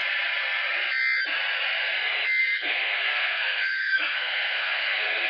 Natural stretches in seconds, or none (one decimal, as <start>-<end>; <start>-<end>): 0.0-2.4